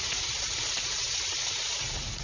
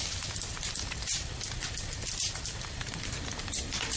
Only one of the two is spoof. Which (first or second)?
first